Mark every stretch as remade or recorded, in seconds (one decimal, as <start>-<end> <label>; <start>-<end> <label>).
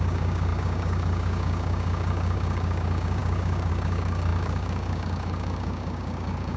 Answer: 0.0-6.6 remade